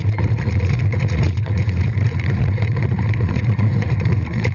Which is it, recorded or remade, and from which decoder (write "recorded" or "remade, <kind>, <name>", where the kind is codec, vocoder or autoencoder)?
remade, vocoder, Vocos